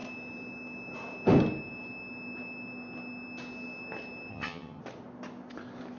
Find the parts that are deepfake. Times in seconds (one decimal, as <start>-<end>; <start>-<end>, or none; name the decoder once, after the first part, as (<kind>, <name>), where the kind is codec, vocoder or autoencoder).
4.3-4.8 (vocoder, HiFi-GAN)